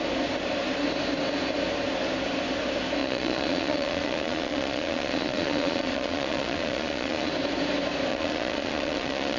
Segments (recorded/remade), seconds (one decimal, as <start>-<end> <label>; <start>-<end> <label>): 0.0-3.0 recorded; 3.0-7.3 remade; 7.3-8.1 recorded; 8.1-9.4 remade